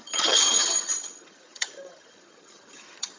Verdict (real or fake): fake